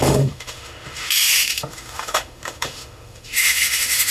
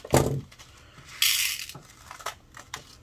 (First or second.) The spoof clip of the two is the first